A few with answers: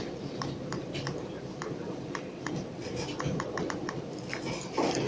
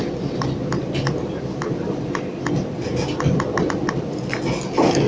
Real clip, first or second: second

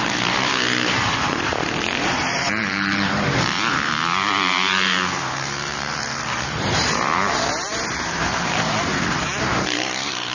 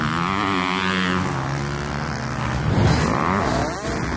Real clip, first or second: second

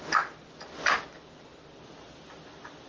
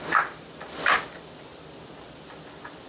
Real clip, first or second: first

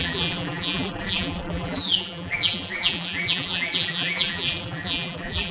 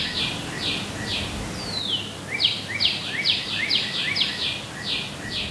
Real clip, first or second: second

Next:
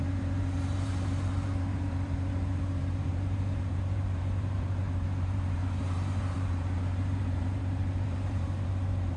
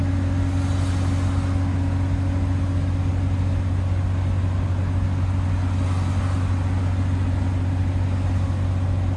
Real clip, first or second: second